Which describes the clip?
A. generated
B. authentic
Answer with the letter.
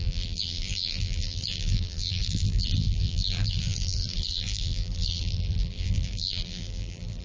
A